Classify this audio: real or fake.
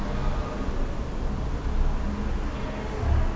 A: real